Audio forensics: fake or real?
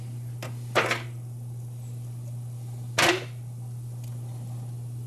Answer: real